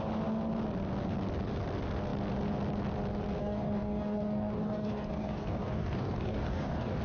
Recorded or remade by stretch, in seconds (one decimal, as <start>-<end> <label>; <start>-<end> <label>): 0.0-3.4 recorded; 3.4-7.0 remade